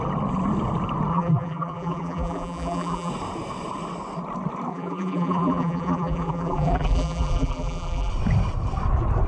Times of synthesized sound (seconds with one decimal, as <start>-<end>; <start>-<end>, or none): 1.1-3.1; 4.7-8.1